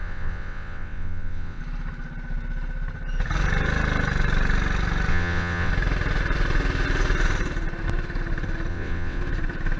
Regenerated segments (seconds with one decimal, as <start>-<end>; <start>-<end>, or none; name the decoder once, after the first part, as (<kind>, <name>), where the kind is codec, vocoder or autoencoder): 0.0-1.6 (vocoder, WaveNeXt); 5.1-5.7; 8.7-9.2